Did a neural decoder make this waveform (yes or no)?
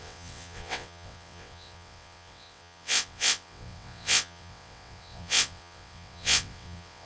yes